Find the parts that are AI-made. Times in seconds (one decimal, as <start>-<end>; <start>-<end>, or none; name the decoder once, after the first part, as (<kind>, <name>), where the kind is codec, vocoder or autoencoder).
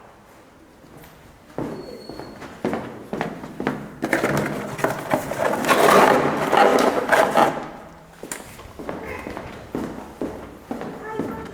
6.7-8.0 (vocoder, BigVGAN v2)